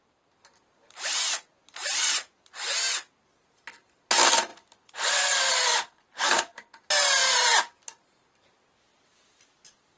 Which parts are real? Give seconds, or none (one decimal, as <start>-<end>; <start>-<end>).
0.0-4.5; 5.2-7.2

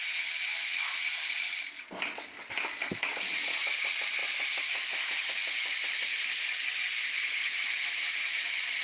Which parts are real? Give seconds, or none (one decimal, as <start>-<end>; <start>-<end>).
0.0-7.4; 8.1-8.8

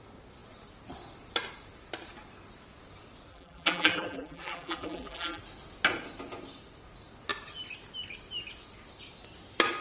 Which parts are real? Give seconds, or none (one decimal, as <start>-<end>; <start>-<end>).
0.0-3.3; 5.4-9.8

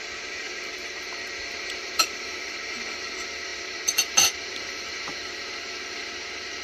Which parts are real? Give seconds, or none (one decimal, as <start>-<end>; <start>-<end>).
none

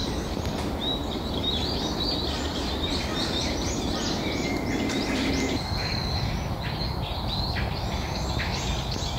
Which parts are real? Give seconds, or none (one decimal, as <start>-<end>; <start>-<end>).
1.9-2.5; 5.3-9.2

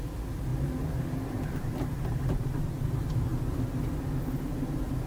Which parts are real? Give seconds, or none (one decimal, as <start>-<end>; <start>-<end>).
0.0-5.1